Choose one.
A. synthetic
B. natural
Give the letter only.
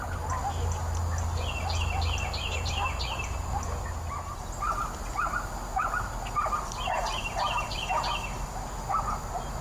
B